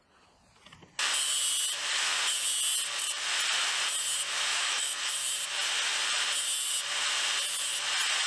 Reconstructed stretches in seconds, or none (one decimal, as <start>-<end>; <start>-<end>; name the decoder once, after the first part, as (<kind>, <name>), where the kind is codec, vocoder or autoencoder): 4.5-5.1 (autoencoder, DAC-VAE)